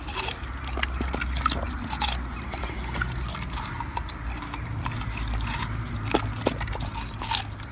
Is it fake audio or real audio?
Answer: real